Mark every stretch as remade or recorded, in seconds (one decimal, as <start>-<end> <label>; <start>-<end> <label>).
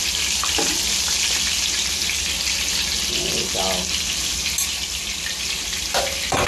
0.0-6.5 recorded